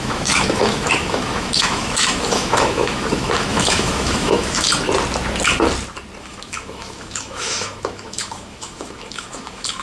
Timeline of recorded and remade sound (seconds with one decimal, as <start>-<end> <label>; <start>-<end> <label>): 0.0-4.7 remade; 4.7-6.2 recorded; 6.2-9.8 remade